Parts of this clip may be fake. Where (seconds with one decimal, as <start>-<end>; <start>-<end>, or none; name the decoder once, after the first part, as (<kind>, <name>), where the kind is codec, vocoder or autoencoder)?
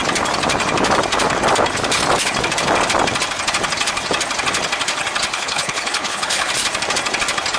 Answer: 5.3-6.5 (codec, HILCodec)